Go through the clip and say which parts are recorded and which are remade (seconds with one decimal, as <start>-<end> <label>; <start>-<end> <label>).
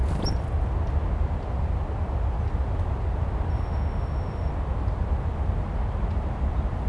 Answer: 0.0-3.5 recorded; 3.5-4.5 remade; 4.5-6.9 recorded